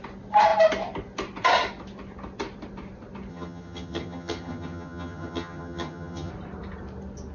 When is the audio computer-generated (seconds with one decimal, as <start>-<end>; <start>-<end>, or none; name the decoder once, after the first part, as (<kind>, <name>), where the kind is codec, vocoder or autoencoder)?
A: 3.3-6.3 (vocoder, HiFi-GAN)